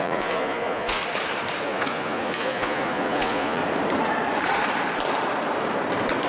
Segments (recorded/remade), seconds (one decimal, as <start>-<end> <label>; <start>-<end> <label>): 0.0-1.0 remade; 1.0-1.6 recorded; 1.6-3.6 remade; 3.6-6.3 recorded